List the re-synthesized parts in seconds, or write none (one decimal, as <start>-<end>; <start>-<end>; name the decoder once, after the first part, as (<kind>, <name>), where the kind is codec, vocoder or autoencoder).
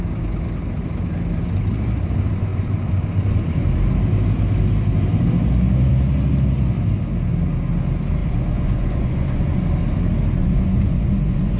8.2-9.6 (vocoder, Vocos); 10.4-11.6